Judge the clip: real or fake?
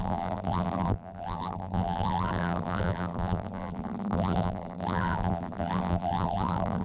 fake